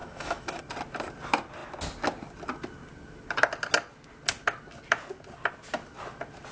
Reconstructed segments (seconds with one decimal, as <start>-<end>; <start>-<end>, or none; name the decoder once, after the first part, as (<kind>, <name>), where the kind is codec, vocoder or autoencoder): 0.0-0.6 (autoencoder, DAC-VAE)

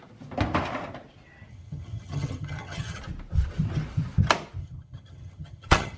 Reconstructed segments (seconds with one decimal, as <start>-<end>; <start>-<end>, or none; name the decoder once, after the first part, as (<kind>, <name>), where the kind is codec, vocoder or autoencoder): 1.5-3.0 (vocoder, HiFi-GAN); 4.6-6.0

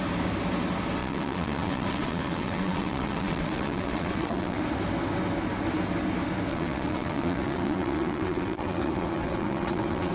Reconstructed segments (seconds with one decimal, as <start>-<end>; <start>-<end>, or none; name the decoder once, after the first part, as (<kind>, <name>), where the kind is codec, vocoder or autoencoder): 1.0-4.6 (vocoder, WaveNeXt); 6.5-10.1

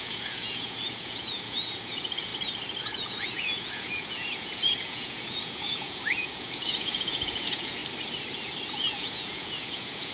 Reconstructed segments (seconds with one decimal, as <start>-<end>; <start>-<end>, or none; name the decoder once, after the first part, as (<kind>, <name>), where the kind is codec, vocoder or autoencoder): 0.0-2.3 (vocoder, Vocos); 2.8-7.8; 8.7-10.1

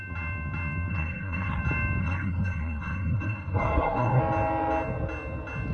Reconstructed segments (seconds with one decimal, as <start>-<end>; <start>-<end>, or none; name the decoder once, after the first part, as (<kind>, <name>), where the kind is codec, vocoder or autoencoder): 0.9-1.6 (codec, SNAC); 2.0-4.2

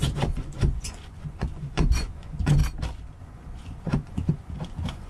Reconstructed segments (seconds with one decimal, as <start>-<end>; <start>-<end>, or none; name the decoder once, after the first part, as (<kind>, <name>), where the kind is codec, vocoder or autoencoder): 0.0-2.6 (vocoder, Vocos); 3.2-5.1